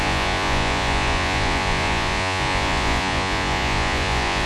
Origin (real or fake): fake